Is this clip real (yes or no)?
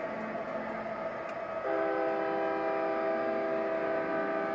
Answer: yes